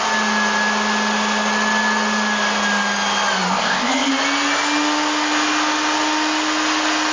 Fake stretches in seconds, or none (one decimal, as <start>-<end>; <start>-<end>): 3.5-4.1